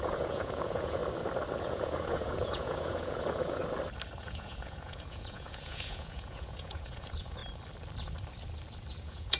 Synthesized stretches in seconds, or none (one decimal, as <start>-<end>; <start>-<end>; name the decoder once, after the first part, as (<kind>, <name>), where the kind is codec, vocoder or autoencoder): 0.0-1.0 (vocoder, Vocos); 1.6-3.6; 4.2-7.4; 8.9-9.4